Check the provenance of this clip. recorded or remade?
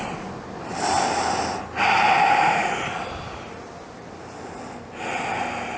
recorded